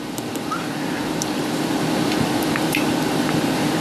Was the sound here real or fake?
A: fake